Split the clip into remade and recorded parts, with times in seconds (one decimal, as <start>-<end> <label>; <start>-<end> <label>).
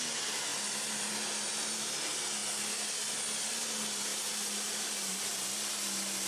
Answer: 0.0-4.1 recorded; 4.1-5.8 remade; 5.8-6.3 recorded